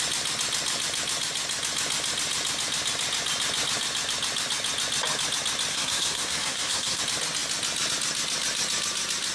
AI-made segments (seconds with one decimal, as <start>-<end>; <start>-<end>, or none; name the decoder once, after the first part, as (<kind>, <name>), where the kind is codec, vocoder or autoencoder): 5.7-7.0 (codec, SNAC)